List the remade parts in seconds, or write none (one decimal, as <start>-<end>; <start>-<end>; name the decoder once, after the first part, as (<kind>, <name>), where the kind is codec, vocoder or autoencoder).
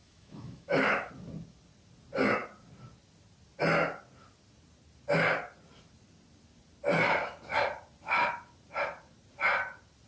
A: 0.0-1.1 (autoencoder, DAC-VAE)